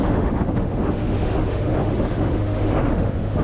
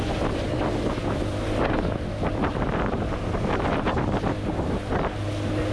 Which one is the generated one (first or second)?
first